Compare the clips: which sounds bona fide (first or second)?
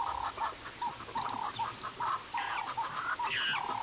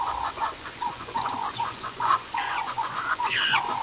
first